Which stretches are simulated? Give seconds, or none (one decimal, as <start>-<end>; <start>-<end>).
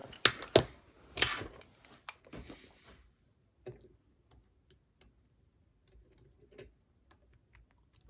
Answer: none